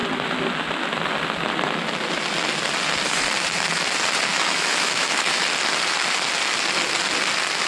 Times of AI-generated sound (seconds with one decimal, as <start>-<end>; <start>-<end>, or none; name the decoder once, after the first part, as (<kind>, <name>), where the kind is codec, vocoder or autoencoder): 4.3-5.4 (autoencoder, DAC-VAE)